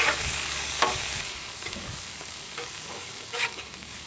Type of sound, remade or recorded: remade